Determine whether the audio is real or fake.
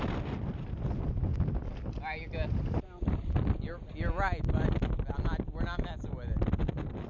real